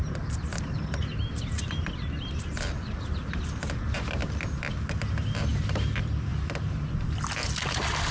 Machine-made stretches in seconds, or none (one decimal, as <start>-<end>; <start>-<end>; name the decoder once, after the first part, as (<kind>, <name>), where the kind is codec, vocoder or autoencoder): 0.5-3.7 (vocoder, BigVGAN v2); 5.5-6.3